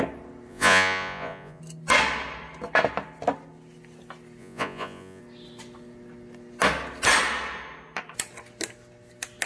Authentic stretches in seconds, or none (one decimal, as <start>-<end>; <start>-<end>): 0.0-0.5; 1.6-4.4; 5.2-9.5